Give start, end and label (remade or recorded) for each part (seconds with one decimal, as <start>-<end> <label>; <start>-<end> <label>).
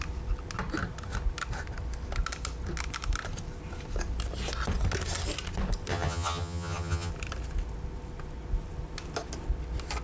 0.0-5.9 recorded; 5.9-7.1 remade; 7.1-10.0 recorded